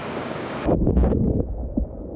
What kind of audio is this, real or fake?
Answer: fake